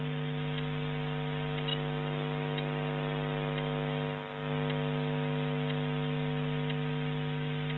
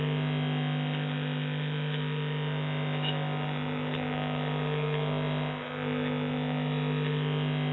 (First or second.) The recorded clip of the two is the first